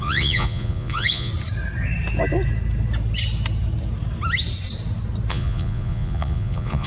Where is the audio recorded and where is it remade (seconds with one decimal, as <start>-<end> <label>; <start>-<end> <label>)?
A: 0.0-1.3 remade; 1.3-5.3 recorded; 5.3-6.9 remade